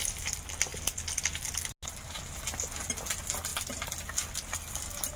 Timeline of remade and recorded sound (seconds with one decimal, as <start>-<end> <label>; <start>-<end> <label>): 0.0-5.2 recorded